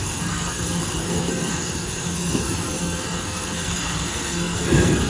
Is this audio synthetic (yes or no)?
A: yes